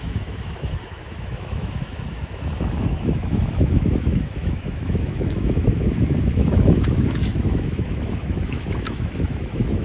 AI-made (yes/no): yes